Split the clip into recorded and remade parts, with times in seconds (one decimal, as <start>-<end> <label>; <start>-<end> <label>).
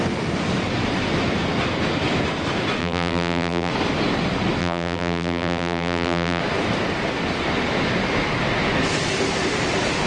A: 0.0-2.8 recorded; 2.8-3.7 remade; 3.7-4.6 recorded; 4.6-6.4 remade; 6.4-10.1 recorded